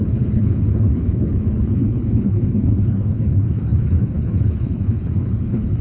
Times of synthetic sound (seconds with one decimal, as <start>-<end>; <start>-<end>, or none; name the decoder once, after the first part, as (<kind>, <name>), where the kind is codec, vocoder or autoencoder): 0.0-5.8 (codec, HILCodec)